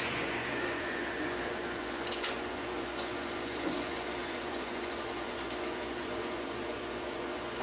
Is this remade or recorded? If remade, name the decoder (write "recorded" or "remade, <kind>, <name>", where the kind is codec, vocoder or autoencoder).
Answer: remade, vocoder, Vocos